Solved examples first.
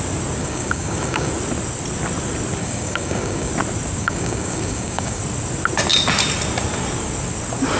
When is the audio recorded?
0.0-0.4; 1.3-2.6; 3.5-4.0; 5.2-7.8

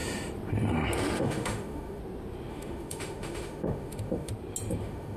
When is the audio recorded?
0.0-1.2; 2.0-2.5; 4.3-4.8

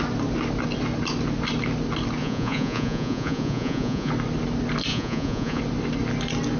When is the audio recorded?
0.0-2.2; 4.1-4.9; 5.6-6.6

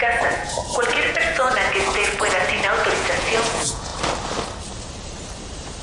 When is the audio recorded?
3.9-5.8

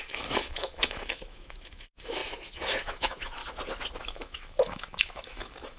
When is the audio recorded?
2.2-2.8; 3.4-4.0